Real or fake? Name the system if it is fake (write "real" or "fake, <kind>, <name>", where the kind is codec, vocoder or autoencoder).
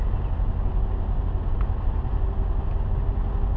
real